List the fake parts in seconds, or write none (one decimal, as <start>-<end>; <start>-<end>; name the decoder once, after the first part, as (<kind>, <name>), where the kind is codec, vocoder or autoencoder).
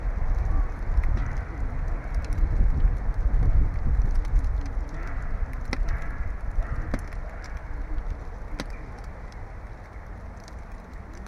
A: 1.2-2.0 (vocoder, BigVGAN v2)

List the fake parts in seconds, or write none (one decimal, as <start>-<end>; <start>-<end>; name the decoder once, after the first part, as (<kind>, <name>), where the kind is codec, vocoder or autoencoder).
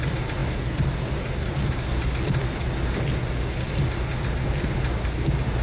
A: none